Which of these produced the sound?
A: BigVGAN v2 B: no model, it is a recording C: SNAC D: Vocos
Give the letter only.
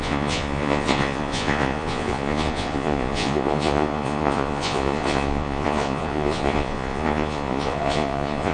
D